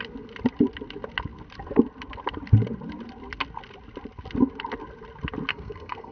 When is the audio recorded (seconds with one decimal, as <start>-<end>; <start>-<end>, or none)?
0.0-5.5